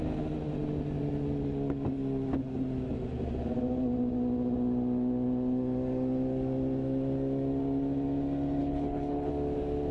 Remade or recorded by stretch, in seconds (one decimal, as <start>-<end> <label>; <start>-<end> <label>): 0.0-8.6 recorded; 8.6-9.3 remade; 9.3-9.9 recorded